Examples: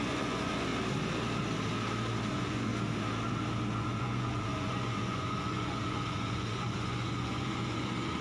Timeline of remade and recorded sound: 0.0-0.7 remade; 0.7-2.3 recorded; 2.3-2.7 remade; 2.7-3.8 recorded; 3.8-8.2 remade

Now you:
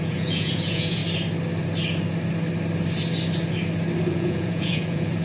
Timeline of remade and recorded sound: 0.0-1.0 remade; 1.0-4.1 recorded; 4.1-5.2 remade

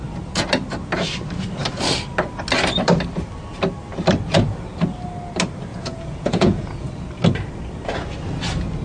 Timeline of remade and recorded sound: 0.0-5.7 recorded; 5.7-6.9 remade; 6.9-8.8 recorded

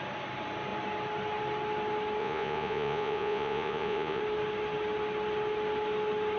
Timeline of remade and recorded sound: 0.0-2.2 recorded; 2.2-4.2 remade; 4.2-6.4 recorded

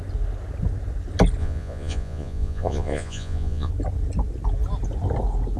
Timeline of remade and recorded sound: 0.0-1.4 recorded; 1.4-3.7 remade; 3.7-5.6 recorded

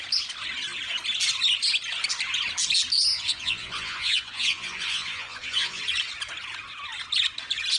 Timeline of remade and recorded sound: 0.0-3.1 recorded; 3.1-5.8 remade; 5.8-7.8 recorded

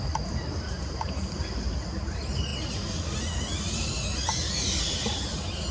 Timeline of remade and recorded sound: 0.0-5.7 recorded